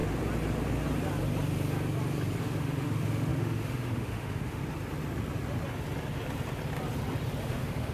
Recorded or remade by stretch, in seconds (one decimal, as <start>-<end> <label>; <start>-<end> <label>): 0.0-2.4 recorded; 2.4-4.6 remade; 4.6-7.4 recorded; 7.4-7.9 remade